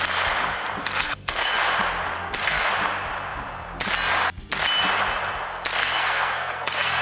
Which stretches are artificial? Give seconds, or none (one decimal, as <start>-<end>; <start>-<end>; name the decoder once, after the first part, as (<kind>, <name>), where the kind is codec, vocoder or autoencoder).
0.8-1.5 (codec, SNAC); 2.2-2.7; 5.8-7.0